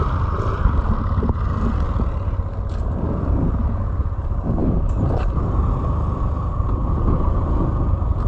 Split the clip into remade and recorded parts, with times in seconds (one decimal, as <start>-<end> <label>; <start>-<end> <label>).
0.0-8.3 recorded